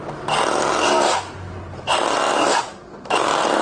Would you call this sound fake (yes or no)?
no